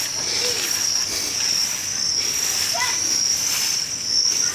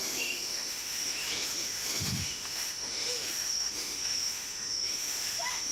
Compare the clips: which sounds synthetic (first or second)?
second